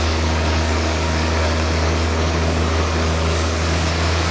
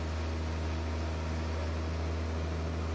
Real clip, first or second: second